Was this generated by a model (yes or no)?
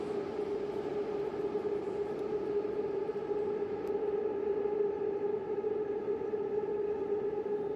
no